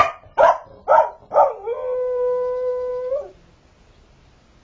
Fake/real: real